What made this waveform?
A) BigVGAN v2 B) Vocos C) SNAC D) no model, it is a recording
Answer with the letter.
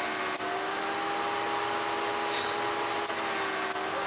D